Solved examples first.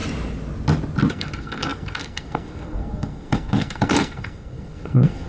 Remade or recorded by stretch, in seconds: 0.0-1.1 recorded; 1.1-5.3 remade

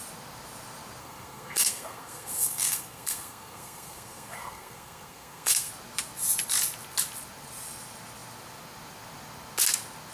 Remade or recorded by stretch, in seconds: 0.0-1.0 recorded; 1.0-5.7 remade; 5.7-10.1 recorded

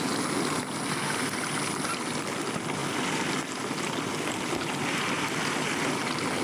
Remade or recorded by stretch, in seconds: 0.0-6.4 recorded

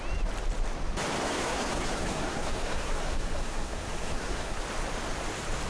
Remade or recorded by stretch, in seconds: 0.0-1.2 recorded; 1.2-4.6 remade; 4.6-5.7 recorded

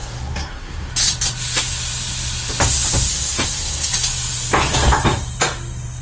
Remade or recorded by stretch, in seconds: 0.0-0.9 remade; 0.9-3.1 recorded; 3.1-3.9 remade; 3.9-6.0 recorded

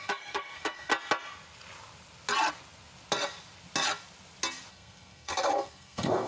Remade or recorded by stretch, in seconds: 0.0-0.9 remade; 0.9-4.7 recorded; 4.7-6.3 remade

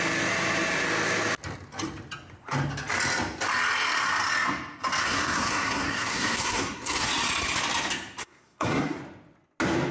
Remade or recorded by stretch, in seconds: 0.0-5.0 recorded; 5.0-7.1 remade; 7.1-8.2 recorded; 8.2-9.0 remade; 9.0-9.9 recorded